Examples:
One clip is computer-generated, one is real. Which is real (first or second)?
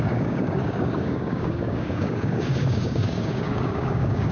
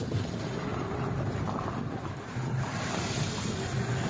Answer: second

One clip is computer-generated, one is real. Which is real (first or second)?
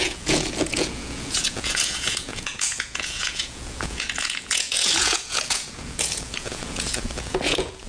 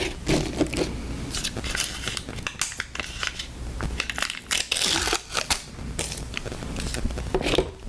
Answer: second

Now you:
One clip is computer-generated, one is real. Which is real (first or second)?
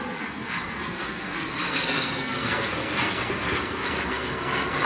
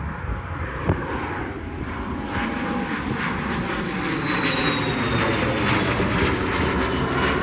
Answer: second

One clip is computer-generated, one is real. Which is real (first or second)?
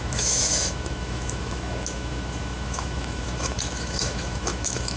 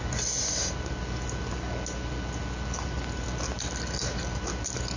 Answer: second